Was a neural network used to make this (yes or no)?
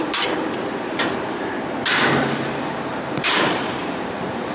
yes